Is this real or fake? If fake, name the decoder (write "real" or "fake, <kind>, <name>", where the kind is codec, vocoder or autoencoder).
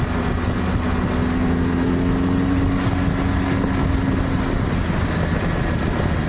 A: real